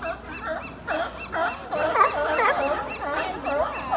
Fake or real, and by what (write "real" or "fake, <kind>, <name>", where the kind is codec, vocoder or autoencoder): real